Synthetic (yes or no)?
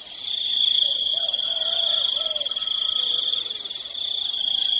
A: yes